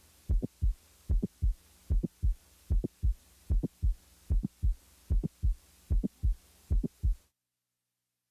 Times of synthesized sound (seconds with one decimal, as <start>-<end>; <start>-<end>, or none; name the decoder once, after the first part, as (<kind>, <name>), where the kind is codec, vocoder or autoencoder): none